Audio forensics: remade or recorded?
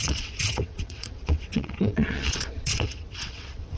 remade